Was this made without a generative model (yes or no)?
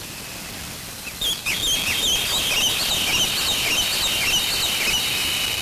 yes